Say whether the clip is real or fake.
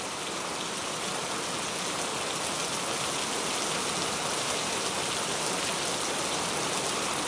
real